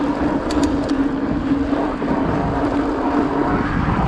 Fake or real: real